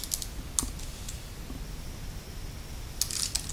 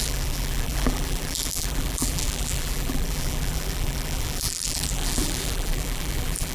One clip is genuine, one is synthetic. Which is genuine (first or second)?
first